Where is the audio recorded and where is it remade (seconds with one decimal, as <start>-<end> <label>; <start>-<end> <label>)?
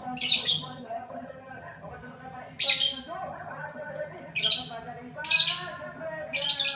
0.0-0.4 recorded; 0.4-1.9 remade; 1.9-3.3 recorded; 3.3-4.3 remade; 4.3-6.8 recorded